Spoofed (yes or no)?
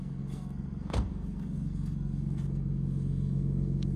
yes